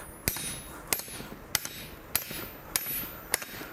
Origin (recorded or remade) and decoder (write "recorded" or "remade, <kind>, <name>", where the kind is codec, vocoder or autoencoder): recorded